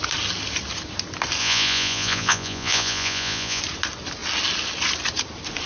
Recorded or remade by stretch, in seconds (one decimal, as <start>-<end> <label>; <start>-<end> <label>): 0.0-1.4 recorded; 1.4-3.6 remade; 3.6-5.7 recorded

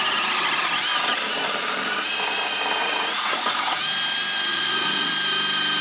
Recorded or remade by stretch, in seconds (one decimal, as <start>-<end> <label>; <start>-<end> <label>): 0.0-2.8 recorded; 2.8-3.8 remade; 3.8-4.5 recorded; 4.5-5.1 remade; 5.1-5.8 recorded

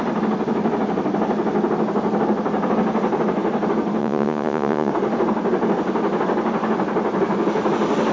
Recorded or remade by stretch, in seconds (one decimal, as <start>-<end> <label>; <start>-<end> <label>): 0.0-4.0 recorded; 4.0-4.9 remade; 4.9-8.1 recorded